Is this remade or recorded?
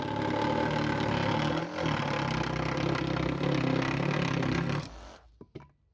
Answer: recorded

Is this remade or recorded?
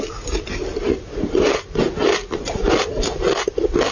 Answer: recorded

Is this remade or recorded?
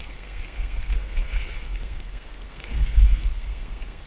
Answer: remade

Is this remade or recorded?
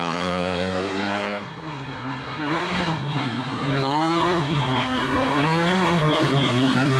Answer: remade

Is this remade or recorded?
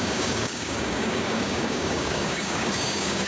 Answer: remade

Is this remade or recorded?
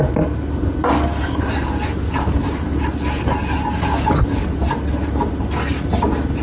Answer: recorded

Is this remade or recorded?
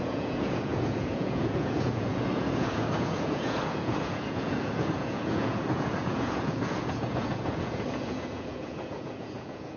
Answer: remade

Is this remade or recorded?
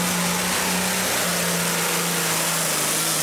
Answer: recorded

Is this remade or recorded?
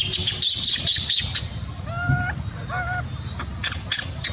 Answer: recorded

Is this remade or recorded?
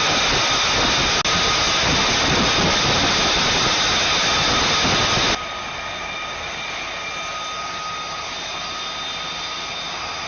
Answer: recorded